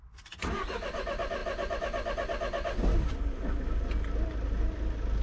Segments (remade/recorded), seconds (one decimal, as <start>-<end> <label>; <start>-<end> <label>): 0.0-5.2 recorded